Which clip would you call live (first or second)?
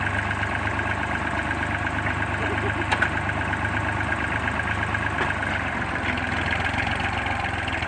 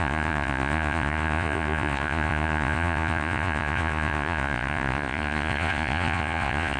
first